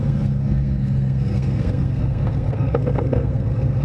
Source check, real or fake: fake